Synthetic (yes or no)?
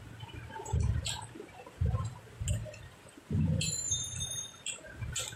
no